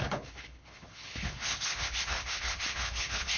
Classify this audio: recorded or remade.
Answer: remade